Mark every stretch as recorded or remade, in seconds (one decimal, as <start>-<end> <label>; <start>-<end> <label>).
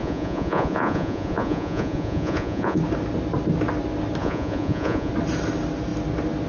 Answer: 0.0-2.8 remade; 2.8-4.2 recorded; 4.2-5.1 remade; 5.1-6.5 recorded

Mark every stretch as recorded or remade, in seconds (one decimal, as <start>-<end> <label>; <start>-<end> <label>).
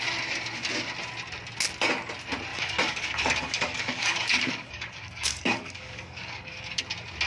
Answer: 0.0-2.5 recorded; 2.5-6.8 remade; 6.8-7.3 recorded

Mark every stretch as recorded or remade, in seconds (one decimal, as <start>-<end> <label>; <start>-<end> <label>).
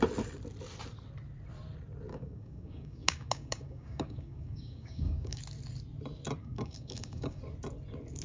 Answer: 0.0-2.1 recorded; 2.1-5.4 remade; 5.4-6.4 recorded; 6.4-7.4 remade; 7.4-8.2 recorded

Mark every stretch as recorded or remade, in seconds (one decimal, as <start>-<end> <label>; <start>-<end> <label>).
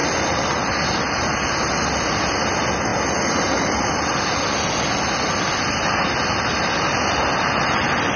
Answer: 0.0-8.2 recorded